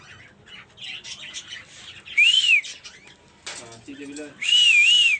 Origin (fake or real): real